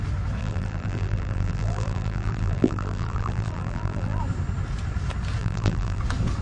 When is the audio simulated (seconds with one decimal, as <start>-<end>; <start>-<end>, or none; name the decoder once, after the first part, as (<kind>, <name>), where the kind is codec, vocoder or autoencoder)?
0.4-4.2 (vocoder, BigVGAN v2); 5.4-6.0